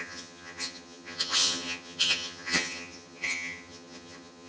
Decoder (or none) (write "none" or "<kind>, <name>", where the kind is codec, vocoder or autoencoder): vocoder, HiFi-GAN